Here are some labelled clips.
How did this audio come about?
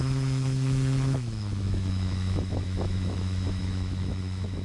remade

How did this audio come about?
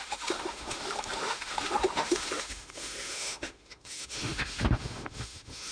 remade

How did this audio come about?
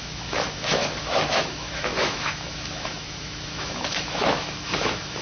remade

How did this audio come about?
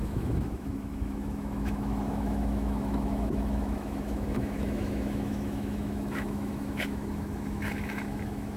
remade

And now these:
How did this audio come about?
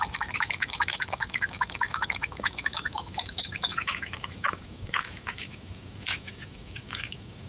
remade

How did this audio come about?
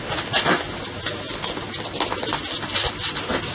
recorded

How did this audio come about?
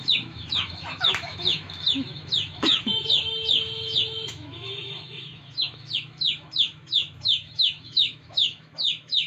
remade